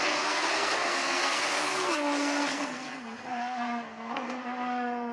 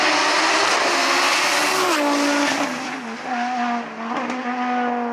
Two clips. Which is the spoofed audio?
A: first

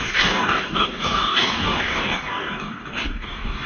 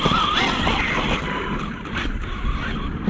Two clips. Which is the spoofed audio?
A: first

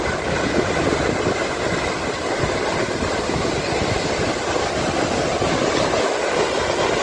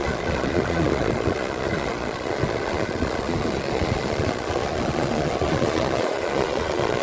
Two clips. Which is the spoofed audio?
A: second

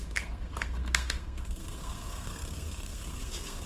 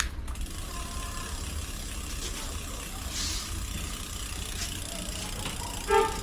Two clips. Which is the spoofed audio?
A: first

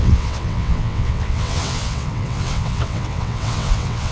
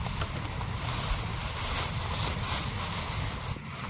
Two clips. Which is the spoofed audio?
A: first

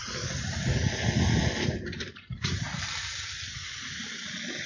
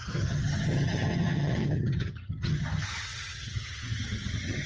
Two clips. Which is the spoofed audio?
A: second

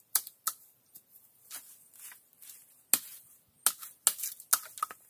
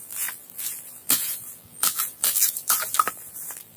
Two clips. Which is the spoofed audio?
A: second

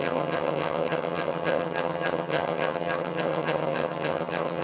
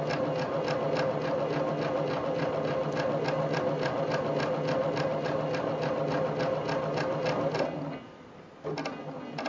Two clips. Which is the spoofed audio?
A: first